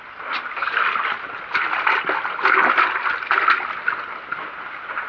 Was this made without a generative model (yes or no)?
yes